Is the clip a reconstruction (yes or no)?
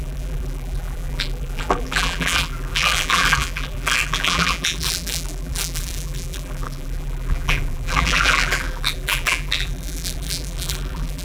yes